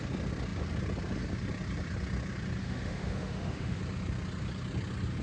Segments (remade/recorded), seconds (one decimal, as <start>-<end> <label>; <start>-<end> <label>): 0.0-2.6 recorded; 2.6-3.8 remade; 3.8-5.2 recorded